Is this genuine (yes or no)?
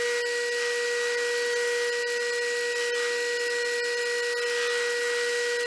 yes